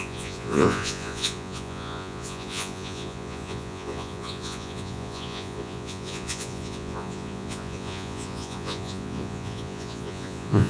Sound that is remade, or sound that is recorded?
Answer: remade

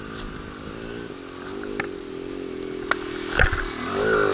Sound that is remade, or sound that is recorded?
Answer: recorded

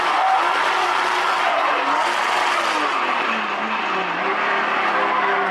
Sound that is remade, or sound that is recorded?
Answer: recorded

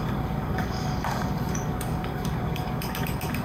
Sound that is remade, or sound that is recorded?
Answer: remade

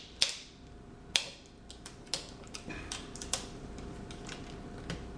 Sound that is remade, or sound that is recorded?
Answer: recorded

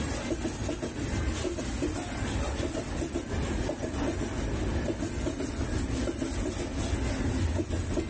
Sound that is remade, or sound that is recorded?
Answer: recorded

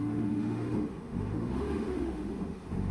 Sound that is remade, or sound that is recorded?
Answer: remade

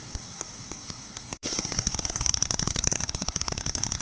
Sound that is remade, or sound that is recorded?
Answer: remade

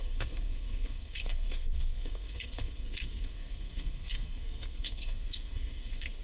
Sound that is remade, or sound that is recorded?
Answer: remade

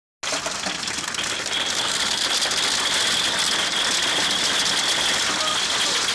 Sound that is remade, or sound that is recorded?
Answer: recorded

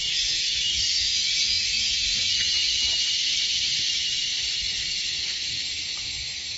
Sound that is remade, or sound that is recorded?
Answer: remade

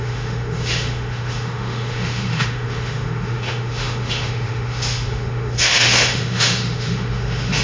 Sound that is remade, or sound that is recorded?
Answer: remade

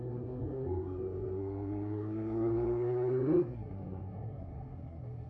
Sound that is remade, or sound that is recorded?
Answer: remade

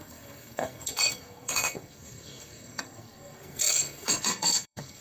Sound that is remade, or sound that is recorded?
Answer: remade